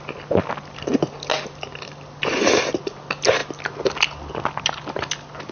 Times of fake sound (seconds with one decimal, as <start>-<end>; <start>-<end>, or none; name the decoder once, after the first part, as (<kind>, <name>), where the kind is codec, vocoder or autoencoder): none